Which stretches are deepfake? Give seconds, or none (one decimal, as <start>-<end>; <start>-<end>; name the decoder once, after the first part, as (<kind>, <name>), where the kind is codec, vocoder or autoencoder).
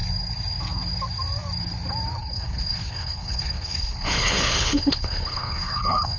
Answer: 2.2-6.2 (codec, HILCodec)